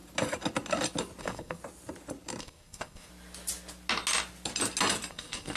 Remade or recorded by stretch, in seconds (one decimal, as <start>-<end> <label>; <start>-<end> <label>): 0.0-1.2 recorded; 1.2-1.6 remade; 1.6-2.4 recorded; 2.4-3.1 remade; 3.1-5.1 recorded; 5.1-5.6 remade